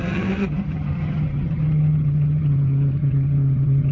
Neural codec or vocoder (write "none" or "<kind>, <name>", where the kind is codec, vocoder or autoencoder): vocoder, HiFi-GAN